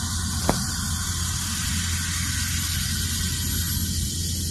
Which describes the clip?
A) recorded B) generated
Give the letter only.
A